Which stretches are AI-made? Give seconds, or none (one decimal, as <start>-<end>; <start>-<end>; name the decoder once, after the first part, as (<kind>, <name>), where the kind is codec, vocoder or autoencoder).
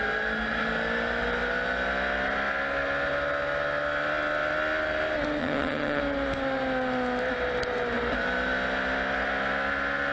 5.4-6.0 (vocoder, HiFi-GAN)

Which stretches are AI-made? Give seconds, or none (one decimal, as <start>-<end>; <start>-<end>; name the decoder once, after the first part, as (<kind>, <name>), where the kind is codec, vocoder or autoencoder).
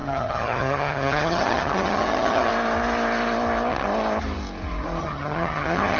0.0-2.5 (vocoder, HiFi-GAN); 5.0-6.0